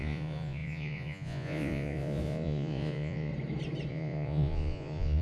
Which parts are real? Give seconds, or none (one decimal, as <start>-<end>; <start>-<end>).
3.3-3.9